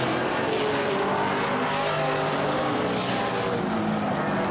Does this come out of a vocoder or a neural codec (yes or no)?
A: no